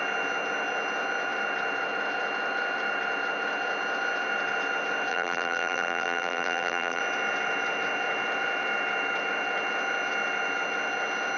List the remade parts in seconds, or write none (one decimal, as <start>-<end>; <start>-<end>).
5.1-7.0